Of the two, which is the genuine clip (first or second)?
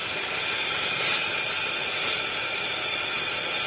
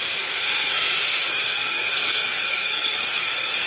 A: first